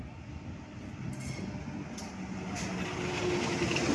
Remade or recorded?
recorded